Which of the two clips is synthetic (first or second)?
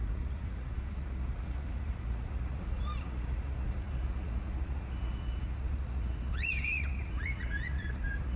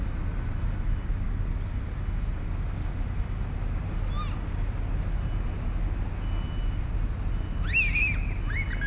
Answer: first